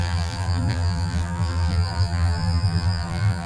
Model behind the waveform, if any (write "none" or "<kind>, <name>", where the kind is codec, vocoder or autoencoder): vocoder, BigVGAN v2